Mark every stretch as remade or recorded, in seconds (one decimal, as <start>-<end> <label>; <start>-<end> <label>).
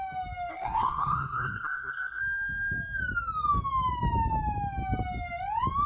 0.0-0.5 recorded; 0.5-2.2 remade; 2.2-5.9 recorded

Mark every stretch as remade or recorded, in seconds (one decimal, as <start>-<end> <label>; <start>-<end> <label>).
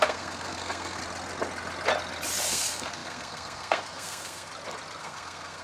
0.0-1.0 remade; 1.0-2.5 recorded; 2.5-4.5 remade; 4.5-5.0 recorded; 5.0-5.6 remade